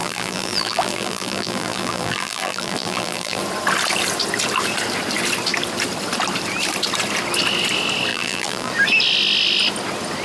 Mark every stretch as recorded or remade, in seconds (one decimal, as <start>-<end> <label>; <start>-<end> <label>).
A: 0.0-3.4 remade; 3.4-8.1 recorded; 8.1-8.7 remade; 8.7-10.2 recorded